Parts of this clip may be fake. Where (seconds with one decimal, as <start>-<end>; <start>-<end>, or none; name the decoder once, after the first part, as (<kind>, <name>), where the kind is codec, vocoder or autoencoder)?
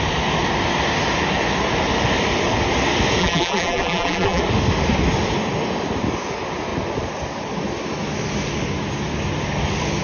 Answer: 3.2-4.4 (vocoder, BigVGAN v2)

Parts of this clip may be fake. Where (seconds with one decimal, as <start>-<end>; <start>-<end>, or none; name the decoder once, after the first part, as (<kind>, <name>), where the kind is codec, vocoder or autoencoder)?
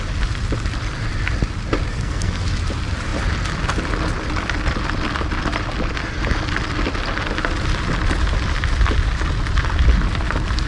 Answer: 1.9-2.4 (codec, SNAC)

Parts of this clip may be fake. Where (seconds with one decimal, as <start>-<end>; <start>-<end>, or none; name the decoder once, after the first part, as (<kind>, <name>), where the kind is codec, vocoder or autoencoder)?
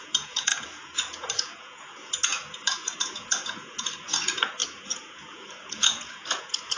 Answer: 0.0-6.8 (vocoder, Vocos)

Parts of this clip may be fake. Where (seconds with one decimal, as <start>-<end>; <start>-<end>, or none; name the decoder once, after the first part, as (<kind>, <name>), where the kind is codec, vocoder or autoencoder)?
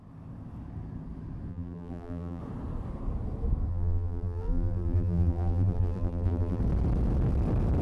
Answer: 1.5-2.4 (vocoder, BigVGAN v2); 3.7-6.6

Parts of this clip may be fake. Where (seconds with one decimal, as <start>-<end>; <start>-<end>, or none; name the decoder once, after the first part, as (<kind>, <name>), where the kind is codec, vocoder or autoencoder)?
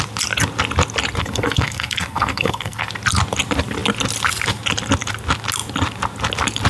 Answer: 1.2-2.9 (codec, SNAC)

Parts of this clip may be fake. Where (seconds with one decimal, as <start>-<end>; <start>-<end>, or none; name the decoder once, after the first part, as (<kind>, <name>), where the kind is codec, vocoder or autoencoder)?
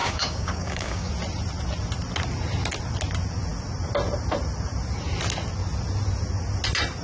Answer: 0.0-1.1 (codec, DAC)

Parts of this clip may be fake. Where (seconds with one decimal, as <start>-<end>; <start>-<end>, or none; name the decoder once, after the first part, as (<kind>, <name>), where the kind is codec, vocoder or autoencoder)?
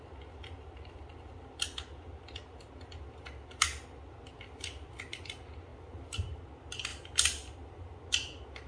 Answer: 5.7-6.4 (vocoder, BigVGAN v2); 6.9-8.1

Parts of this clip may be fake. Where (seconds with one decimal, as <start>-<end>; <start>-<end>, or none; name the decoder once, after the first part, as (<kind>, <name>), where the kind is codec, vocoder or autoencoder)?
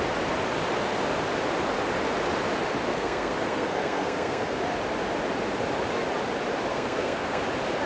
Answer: 2.9-4.6 (codec, SNAC); 6.7-7.4